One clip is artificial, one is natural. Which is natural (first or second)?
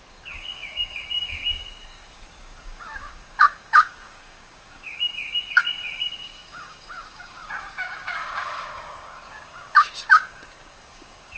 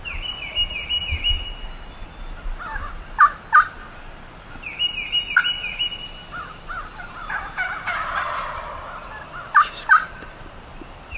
second